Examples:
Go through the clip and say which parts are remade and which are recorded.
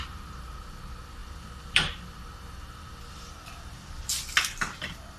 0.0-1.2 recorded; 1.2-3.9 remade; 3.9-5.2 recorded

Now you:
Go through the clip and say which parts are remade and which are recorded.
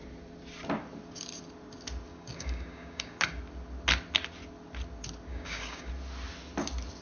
0.0-2.1 recorded; 2.1-3.2 remade; 3.2-5.3 recorded; 5.3-5.9 remade; 5.9-7.0 recorded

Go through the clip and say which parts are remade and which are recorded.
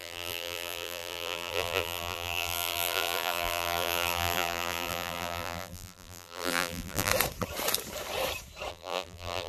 0.0-7.1 remade; 7.1-8.7 recorded; 8.7-9.5 remade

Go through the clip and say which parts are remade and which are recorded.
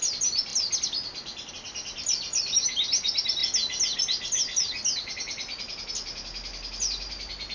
0.0-7.5 recorded